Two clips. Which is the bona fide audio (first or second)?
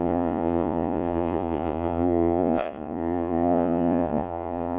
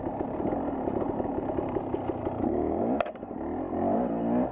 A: second